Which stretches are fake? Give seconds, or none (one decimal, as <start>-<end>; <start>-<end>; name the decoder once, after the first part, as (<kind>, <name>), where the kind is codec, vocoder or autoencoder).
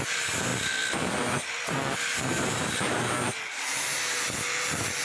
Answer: none